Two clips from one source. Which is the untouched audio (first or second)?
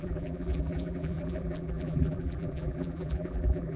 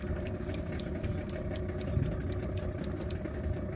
second